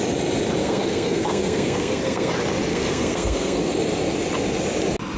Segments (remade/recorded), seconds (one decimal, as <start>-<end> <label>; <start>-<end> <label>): 0.0-0.6 recorded; 0.6-2.3 remade; 2.3-2.7 recorded; 2.7-3.7 remade; 3.7-5.2 recorded